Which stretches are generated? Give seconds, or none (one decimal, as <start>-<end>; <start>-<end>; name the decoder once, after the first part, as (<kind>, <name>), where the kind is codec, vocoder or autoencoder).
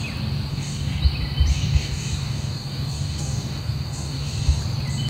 0.5-1.0 (codec, DAC); 1.5-4.6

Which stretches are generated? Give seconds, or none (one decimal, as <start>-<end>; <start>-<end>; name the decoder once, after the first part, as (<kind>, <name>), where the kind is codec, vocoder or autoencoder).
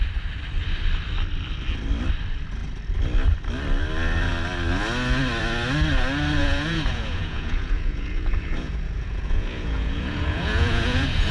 6.4-11.3 (vocoder, Vocos)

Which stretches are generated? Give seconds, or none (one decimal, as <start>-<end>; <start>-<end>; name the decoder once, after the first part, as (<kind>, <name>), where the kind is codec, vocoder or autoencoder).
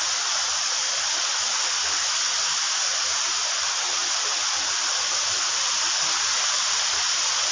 none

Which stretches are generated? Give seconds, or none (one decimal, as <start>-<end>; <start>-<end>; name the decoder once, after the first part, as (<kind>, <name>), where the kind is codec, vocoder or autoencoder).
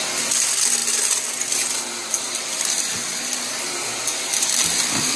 none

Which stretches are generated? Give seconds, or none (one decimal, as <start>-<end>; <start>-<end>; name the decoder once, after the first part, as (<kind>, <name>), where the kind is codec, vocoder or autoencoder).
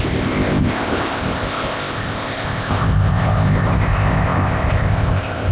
0.0-5.5 (codec, ZipCodec)